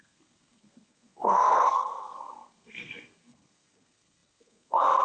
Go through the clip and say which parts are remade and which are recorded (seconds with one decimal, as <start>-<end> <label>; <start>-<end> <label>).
0.0-5.0 remade